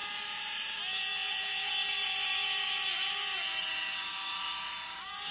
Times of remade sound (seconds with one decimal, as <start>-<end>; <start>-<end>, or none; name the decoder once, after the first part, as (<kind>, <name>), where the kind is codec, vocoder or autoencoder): none